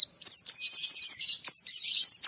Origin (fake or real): fake